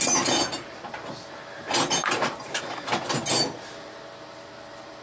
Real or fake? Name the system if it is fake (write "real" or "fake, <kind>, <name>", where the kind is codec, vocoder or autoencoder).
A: real